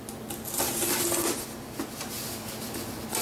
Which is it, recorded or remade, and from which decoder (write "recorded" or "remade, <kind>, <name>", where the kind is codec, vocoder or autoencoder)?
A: recorded